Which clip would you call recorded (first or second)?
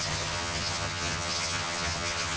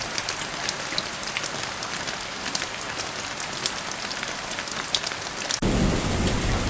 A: second